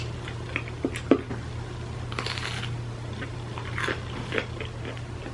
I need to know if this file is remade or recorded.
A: recorded